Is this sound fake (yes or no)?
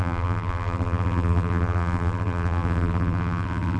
yes